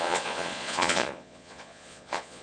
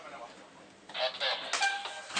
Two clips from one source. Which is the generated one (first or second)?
first